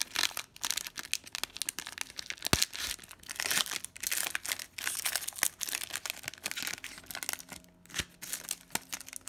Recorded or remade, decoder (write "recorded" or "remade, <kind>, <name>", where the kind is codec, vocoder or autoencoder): recorded